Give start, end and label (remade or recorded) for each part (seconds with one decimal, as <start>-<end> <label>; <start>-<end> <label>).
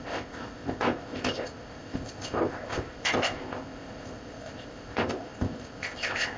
0.0-6.4 remade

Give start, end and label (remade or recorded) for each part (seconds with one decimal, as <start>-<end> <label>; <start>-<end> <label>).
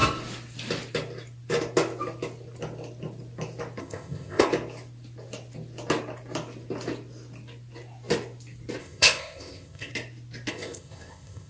0.0-3.8 recorded; 3.8-4.5 remade; 4.5-8.8 recorded; 8.8-9.9 remade; 9.9-10.5 recorded; 10.5-11.5 remade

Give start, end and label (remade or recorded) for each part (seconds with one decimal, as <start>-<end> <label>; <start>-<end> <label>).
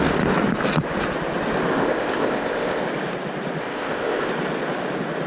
0.0-1.7 recorded; 1.7-2.8 remade; 2.8-3.6 recorded; 3.6-4.3 remade; 4.3-5.3 recorded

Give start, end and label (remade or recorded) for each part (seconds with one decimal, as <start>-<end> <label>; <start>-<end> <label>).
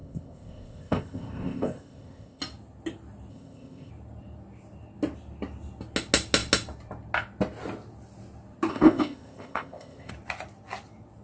0.0-2.4 remade; 2.4-3.3 recorded; 3.3-3.9 remade; 3.9-8.7 recorded; 8.7-10.1 remade; 10.1-11.2 recorded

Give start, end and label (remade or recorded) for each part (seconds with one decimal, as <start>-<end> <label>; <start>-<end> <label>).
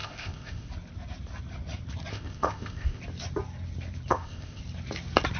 0.0-0.7 remade; 0.7-2.1 recorded; 2.1-3.0 remade; 3.0-4.1 recorded; 4.1-4.6 remade; 4.6-5.4 recorded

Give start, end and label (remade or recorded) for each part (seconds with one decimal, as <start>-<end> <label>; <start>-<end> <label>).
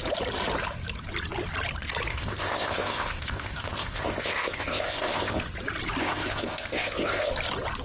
0.0-2.1 recorded; 2.1-5.4 remade; 5.4-6.0 recorded; 6.0-7.3 remade; 7.3-7.8 recorded